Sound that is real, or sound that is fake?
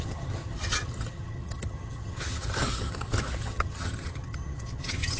fake